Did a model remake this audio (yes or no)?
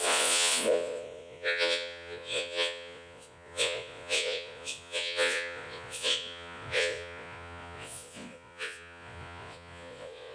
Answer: yes